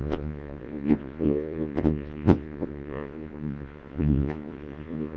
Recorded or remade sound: remade